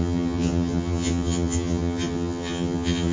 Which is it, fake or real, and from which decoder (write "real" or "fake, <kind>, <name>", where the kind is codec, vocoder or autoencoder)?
fake, vocoder, HiFi-GAN